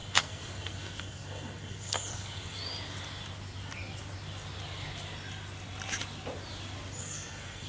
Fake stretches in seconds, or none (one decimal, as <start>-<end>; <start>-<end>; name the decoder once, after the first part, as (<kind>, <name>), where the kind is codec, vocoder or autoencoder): 0.0-2.6 (codec, SNAC); 7.0-7.7